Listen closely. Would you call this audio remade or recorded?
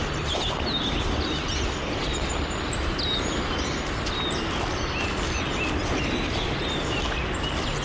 recorded